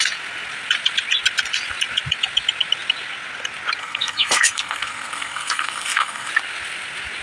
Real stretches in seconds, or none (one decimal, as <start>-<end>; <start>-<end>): 0.0-3.8; 6.3-7.2